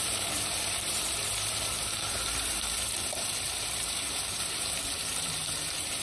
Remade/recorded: remade